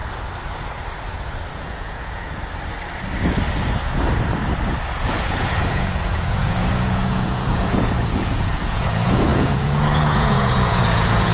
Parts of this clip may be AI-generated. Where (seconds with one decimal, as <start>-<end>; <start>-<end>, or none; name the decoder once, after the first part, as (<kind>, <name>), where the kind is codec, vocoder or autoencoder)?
1.5-2.4 (vocoder, Vocos); 5.1-11.3